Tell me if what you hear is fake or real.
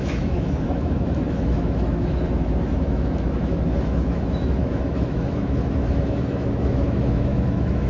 fake